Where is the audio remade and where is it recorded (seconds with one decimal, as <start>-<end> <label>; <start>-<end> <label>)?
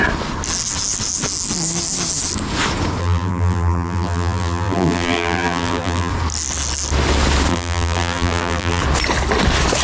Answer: 0.0-3.0 recorded; 3.0-6.1 remade; 6.1-7.5 recorded; 7.5-8.8 remade; 8.8-9.8 recorded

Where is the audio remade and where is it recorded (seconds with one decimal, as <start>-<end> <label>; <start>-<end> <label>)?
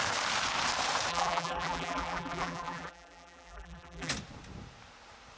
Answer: 0.0-1.1 recorded; 1.1-4.1 remade; 4.1-5.4 recorded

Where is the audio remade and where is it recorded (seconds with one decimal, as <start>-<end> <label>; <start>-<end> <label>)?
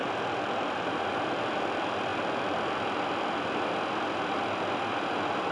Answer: 0.0-0.9 remade; 0.9-5.5 recorded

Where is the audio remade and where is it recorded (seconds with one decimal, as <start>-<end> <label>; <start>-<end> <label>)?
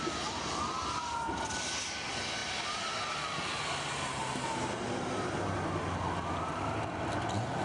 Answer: 0.0-7.6 recorded